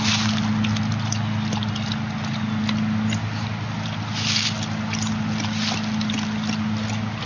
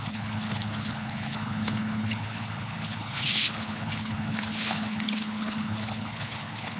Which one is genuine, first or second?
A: first